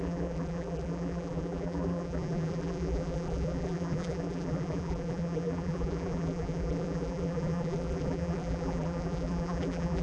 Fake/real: fake